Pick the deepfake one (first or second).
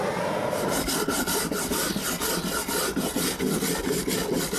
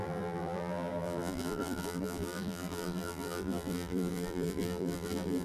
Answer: second